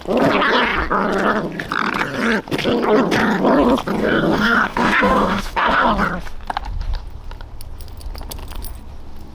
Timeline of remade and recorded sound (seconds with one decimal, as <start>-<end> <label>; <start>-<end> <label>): 0.0-4.0 recorded; 4.0-5.9 remade; 5.9-9.3 recorded